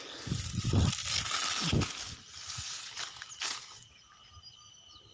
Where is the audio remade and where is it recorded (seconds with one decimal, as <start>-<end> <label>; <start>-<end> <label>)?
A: 0.0-5.1 recorded